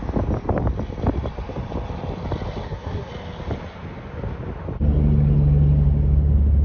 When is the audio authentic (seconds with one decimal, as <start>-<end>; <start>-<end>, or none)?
0.0-2.6; 3.1-6.6